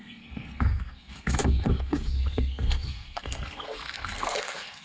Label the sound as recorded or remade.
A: remade